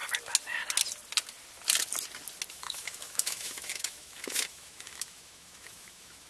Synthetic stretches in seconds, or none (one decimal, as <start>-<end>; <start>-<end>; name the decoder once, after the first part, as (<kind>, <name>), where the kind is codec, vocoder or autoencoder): 2.5-6.3 (autoencoder, DAC-VAE)